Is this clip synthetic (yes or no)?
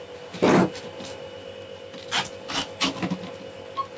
no